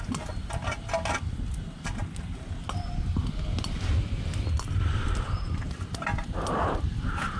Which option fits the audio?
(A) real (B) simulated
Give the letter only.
A